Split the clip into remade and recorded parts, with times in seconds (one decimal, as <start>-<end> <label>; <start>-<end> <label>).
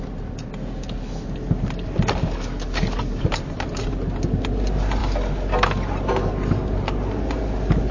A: 0.0-2.2 recorded; 2.2-3.2 remade; 3.2-7.9 recorded